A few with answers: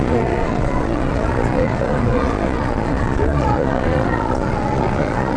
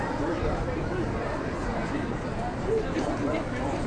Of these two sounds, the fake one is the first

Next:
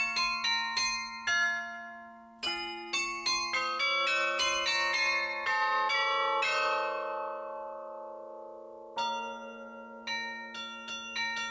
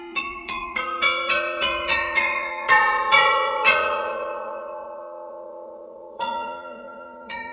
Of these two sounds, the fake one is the second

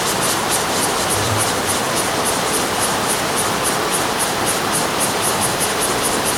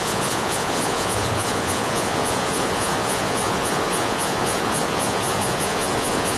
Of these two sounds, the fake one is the second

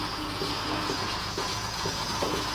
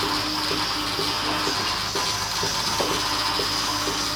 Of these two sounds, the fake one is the first